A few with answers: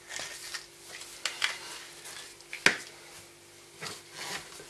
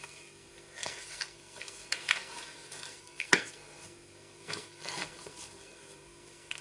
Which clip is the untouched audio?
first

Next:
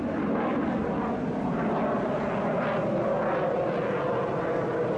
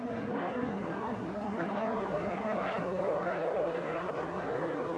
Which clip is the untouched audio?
first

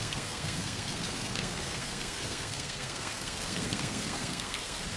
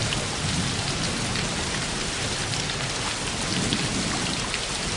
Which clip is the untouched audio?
second